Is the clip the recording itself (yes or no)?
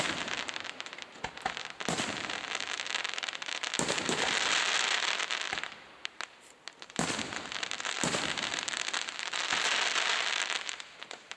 no